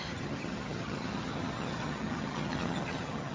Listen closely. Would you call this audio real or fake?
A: fake